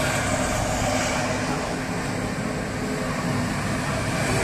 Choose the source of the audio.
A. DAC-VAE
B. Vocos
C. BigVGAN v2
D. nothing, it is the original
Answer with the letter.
D